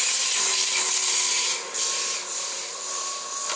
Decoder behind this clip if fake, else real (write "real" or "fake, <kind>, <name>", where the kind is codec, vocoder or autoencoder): fake, vocoder, BigVGAN v2